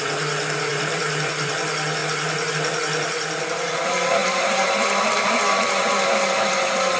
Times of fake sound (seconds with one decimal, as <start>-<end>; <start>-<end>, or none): 0.7-1.5; 2.0-2.5; 4.2-5.9